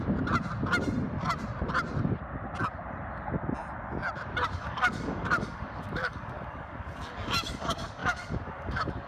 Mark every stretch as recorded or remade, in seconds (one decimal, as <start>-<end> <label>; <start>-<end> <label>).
0.0-4.5 recorded; 4.5-9.1 remade